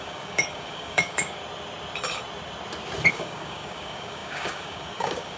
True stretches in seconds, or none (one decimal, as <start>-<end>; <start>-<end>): 1.4-3.1